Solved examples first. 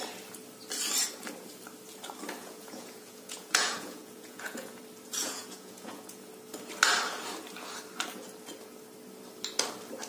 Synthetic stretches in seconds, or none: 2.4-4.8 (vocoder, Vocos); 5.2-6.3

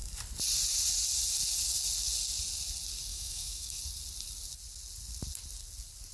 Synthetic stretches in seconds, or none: 3.1-3.8 (autoencoder, DAC-VAE)

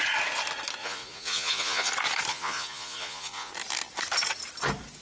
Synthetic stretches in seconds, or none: 0.8-1.9 (vocoder, Vocos); 2.3-3.5

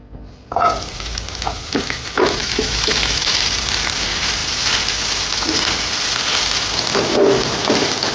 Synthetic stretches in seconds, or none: 2.4-3.3 (autoencoder, DAC-VAE)

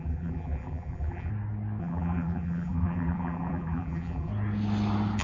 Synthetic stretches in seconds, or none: 0.0-1.3 (vocoder, BigVGAN v2); 1.8-4.3